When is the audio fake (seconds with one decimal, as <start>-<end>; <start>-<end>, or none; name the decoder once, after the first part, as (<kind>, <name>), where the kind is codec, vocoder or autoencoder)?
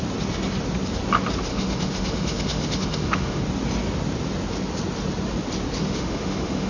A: 1.5-3.4 (autoencoder, DAC-VAE); 5.8-6.7